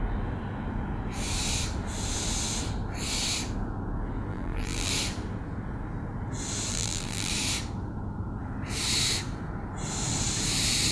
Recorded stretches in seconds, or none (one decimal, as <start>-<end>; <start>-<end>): 0.0-4.3; 4.9-6.7; 7.3-10.9